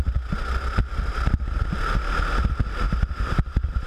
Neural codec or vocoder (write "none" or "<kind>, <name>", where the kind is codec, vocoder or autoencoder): none